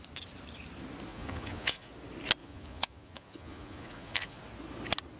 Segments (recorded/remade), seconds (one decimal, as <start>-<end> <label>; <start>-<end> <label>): 0.0-1.1 recorded; 1.1-1.9 remade; 1.9-2.4 recorded; 2.4-4.4 remade; 4.4-5.2 recorded